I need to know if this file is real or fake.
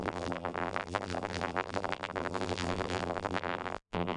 fake